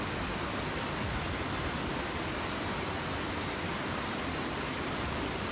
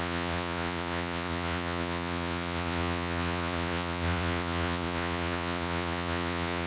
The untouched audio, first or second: first